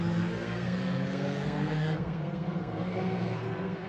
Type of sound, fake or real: fake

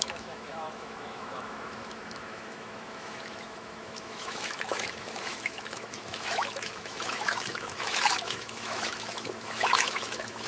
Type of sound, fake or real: fake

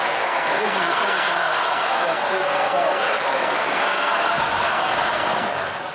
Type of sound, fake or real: fake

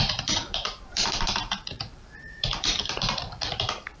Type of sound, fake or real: fake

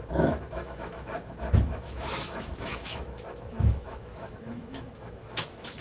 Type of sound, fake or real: fake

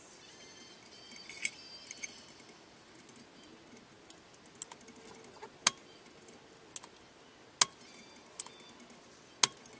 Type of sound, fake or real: real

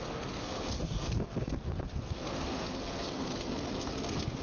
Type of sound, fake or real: fake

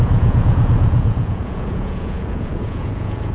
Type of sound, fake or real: fake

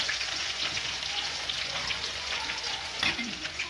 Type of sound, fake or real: fake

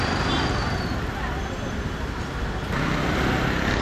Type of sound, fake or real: real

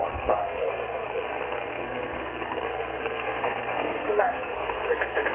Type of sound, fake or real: fake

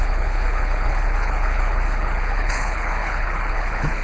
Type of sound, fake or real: fake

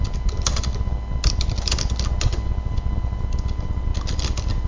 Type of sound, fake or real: real